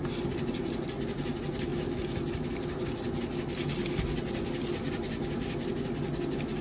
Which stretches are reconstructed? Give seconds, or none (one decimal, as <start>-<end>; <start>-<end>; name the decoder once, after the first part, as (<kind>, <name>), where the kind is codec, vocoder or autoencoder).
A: none